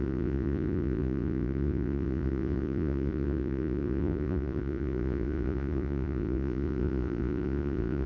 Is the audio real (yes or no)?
no